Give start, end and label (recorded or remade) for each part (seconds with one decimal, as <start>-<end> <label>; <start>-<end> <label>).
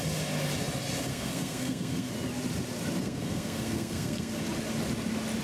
0.0-1.1 recorded; 1.1-2.1 remade; 2.1-3.0 recorded; 3.0-4.4 remade; 4.4-5.4 recorded